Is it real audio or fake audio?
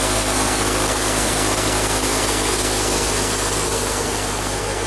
fake